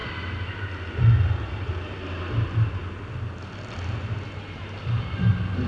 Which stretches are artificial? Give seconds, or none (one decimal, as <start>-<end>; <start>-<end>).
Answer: none